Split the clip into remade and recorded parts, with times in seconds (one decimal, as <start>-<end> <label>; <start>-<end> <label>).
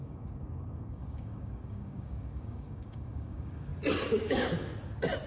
0.0-3.7 remade; 3.7-4.2 recorded; 4.2-4.7 remade; 4.7-5.3 recorded